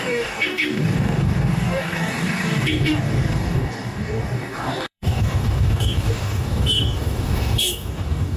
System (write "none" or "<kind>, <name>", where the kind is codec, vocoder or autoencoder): codec, DAC